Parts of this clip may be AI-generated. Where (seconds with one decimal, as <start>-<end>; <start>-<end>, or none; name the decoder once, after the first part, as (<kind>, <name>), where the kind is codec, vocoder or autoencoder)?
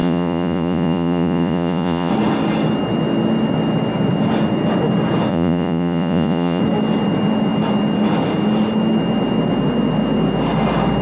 0.0-2.1 (vocoder, Vocos); 5.3-6.6